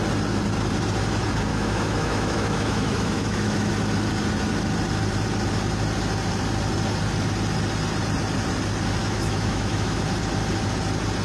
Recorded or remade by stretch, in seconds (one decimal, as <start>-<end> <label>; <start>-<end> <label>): 0.0-1.5 recorded; 1.5-3.7 remade; 3.7-9.0 recorded; 9.0-10.0 remade; 10.0-11.2 recorded